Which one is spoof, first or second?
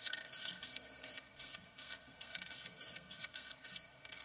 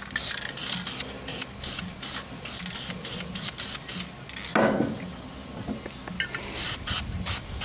first